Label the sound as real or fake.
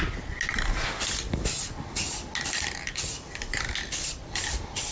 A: real